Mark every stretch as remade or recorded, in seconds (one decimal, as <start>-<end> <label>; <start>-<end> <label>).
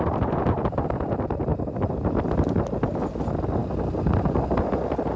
0.0-5.2 recorded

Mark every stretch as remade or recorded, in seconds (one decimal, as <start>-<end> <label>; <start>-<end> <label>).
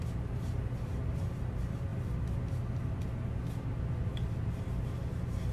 0.0-5.5 recorded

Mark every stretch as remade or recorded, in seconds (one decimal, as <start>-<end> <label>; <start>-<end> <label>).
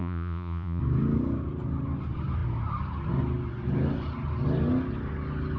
0.0-0.8 remade; 0.8-5.6 recorded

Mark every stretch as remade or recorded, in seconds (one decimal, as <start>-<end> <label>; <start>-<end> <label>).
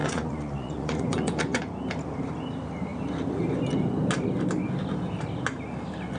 0.0-1.6 remade; 1.6-6.2 recorded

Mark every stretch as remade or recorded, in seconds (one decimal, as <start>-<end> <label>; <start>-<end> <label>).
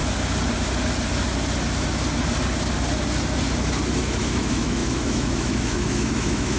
0.0-4.0 recorded; 4.0-6.6 remade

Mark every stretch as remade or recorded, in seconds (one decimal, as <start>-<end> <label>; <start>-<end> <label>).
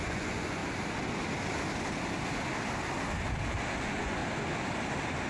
0.0-0.6 remade; 0.6-3.8 recorded; 3.8-4.2 remade; 4.2-5.3 recorded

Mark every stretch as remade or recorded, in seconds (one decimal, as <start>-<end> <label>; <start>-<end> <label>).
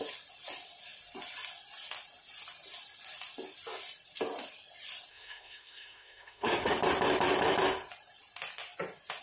0.0-5.1 recorded; 5.1-6.7 remade; 6.7-9.2 recorded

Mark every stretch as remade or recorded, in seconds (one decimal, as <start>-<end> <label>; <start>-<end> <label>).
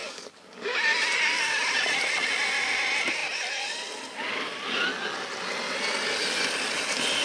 0.0-0.8 remade; 0.8-7.2 recorded